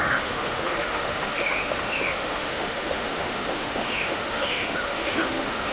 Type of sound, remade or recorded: remade